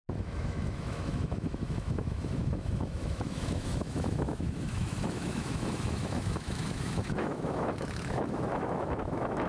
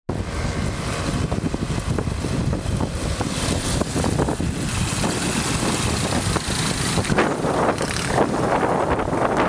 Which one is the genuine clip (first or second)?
second